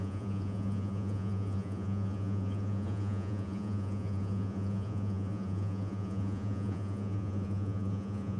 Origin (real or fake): fake